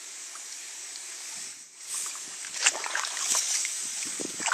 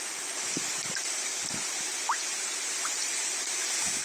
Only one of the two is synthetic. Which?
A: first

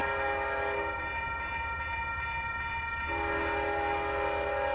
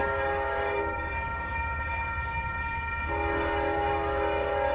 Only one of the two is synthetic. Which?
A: second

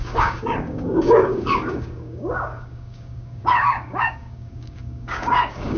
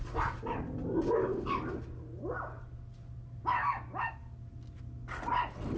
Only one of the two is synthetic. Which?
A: first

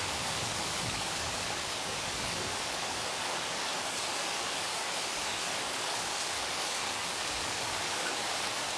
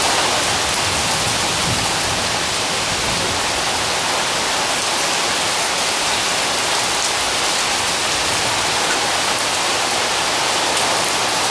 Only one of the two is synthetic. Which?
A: first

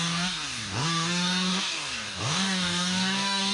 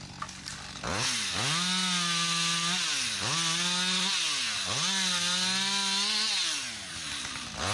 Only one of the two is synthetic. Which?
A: first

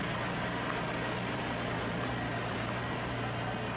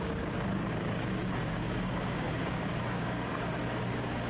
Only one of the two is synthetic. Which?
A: second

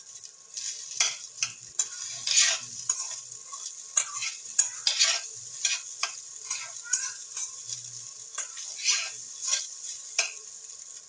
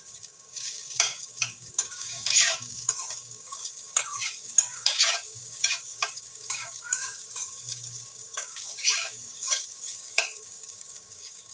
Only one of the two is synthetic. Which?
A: second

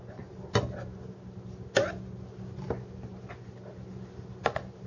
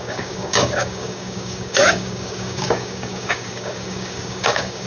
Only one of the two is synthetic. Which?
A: second